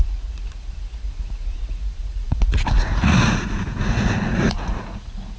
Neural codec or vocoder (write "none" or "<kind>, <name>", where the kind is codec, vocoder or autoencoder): vocoder, Vocos